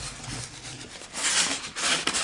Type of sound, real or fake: real